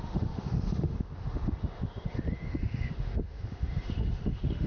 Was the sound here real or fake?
fake